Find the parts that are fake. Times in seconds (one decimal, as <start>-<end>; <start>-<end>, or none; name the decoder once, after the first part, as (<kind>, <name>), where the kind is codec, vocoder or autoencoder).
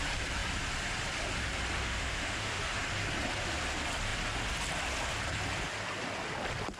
1.8-2.6 (autoencoder, DAC-VAE)